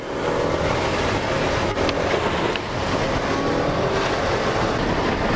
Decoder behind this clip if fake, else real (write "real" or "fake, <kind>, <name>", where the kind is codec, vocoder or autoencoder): real